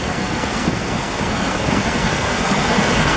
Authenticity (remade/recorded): remade